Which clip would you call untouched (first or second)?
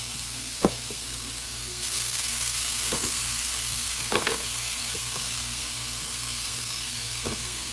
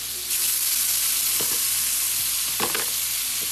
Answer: second